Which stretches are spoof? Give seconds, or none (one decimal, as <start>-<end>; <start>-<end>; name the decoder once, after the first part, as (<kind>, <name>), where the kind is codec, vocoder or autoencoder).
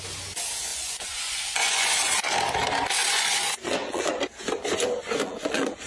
0.7-2.1 (vocoder, Vocos); 3.0-4.2; 5.0-5.9